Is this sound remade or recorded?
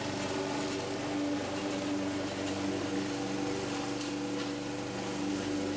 recorded